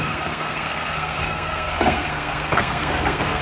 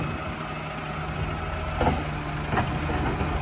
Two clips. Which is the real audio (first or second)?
second